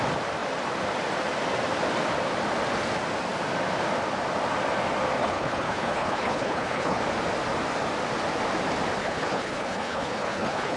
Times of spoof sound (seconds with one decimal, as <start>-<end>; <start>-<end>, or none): 5.2-7.0; 9.0-10.8